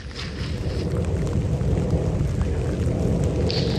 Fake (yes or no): no